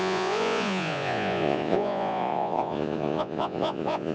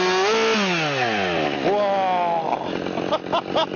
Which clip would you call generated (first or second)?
first